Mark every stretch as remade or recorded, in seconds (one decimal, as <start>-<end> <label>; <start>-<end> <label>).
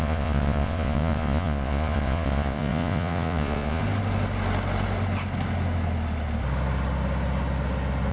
0.0-3.8 remade; 3.8-8.1 recorded